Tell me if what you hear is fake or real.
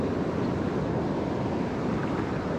real